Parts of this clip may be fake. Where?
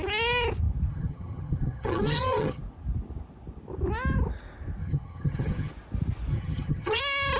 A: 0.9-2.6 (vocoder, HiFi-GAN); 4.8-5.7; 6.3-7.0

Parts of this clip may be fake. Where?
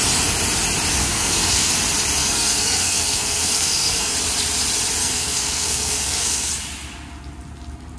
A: 1.0-1.7 (codec, SNAC); 2.2-4.1; 5.0-6.5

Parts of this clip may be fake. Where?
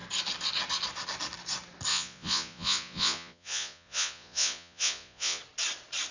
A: 1.9-5.4 (vocoder, Vocos)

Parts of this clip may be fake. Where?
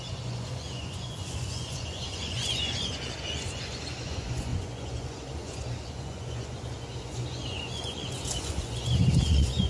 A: 0.0-9.7 (vocoder, Vocos)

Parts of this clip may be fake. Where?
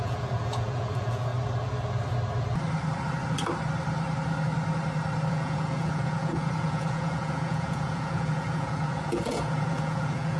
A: 0.0-1.3 (vocoder, Vocos); 5.3-10.4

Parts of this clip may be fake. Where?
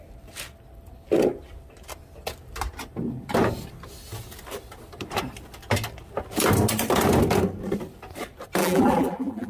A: 8.6-9.5 (vocoder, BigVGAN v2)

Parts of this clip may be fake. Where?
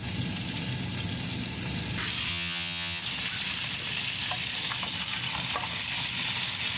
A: 2.3-3.0 (vocoder, HiFi-GAN)